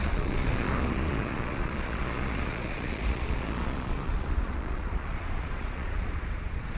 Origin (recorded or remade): remade